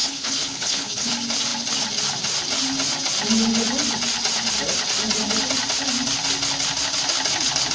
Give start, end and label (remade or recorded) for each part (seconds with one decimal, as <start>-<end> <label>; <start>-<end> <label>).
0.0-1.1 remade; 1.1-7.7 recorded